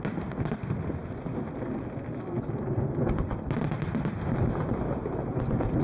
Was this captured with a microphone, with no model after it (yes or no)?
yes